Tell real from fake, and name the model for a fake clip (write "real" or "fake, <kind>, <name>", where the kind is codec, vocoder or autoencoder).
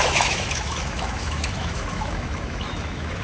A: fake, autoencoder, DAC-VAE